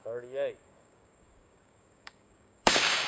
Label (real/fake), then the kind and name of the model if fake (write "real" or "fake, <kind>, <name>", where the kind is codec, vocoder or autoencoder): fake, codec, DAC